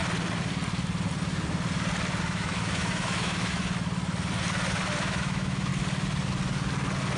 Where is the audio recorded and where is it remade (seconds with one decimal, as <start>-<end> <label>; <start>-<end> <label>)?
0.0-2.2 recorded; 2.2-3.6 remade; 3.6-5.0 recorded; 5.0-5.7 remade; 5.7-7.2 recorded